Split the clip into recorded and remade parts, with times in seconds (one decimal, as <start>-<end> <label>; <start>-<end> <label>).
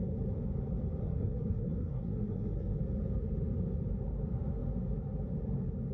0.0-1.0 recorded; 1.0-2.8 remade; 2.8-5.9 recorded